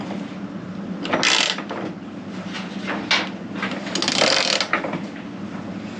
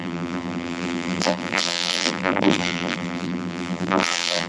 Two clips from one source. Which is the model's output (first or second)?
second